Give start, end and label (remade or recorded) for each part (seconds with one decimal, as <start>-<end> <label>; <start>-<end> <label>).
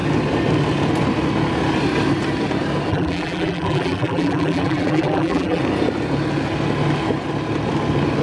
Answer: 0.0-2.9 recorded; 2.9-5.6 remade; 5.6-8.2 recorded